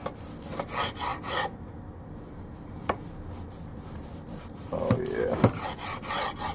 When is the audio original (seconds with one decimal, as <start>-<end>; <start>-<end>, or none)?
0.0-1.1; 5.0-6.5